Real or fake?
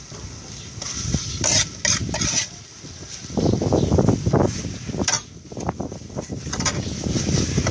real